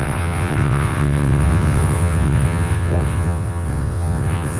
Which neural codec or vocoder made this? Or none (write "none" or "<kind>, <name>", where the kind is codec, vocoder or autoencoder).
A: vocoder, WaveNeXt